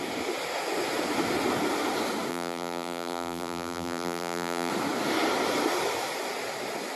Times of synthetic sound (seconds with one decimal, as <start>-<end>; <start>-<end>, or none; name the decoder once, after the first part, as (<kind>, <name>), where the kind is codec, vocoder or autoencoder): 2.3-4.7 (vocoder, BigVGAN v2)